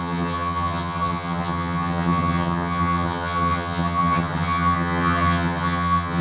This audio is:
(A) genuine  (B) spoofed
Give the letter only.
B